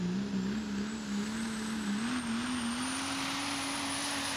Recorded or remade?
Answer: recorded